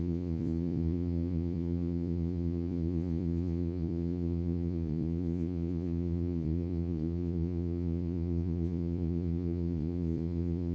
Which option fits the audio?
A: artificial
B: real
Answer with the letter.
A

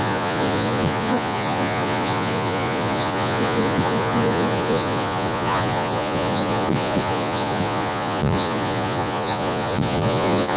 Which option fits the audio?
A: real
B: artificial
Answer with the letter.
B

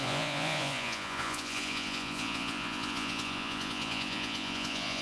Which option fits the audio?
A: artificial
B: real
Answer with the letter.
A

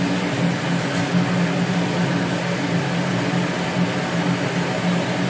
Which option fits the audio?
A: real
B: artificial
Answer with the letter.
A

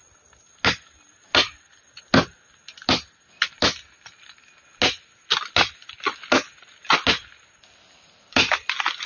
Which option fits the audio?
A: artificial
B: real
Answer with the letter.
B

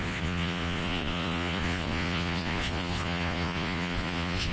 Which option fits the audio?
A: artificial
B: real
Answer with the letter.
A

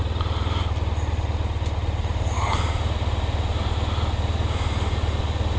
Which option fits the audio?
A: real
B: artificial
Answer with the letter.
A